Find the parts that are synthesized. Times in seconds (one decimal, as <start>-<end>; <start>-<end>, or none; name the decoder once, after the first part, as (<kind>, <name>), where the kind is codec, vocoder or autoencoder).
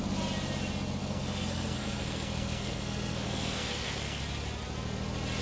1.0-4.2 (codec, SNAC)